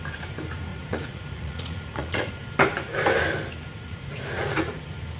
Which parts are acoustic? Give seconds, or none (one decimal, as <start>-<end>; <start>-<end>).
0.0-0.7; 2.3-3.7; 4.8-5.2